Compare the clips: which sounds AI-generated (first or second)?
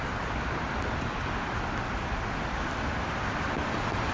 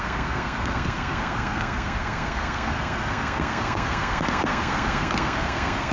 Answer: second